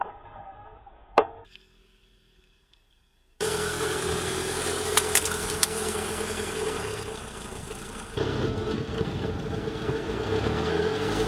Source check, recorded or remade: remade